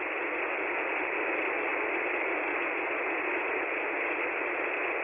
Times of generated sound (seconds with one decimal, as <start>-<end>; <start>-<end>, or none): none